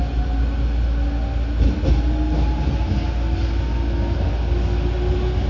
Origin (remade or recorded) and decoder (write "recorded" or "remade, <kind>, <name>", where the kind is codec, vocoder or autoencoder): recorded